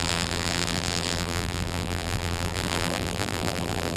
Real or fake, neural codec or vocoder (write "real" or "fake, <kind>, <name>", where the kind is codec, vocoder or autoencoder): fake, vocoder, BigVGAN v2